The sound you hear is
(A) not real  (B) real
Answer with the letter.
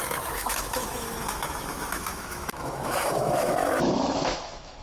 A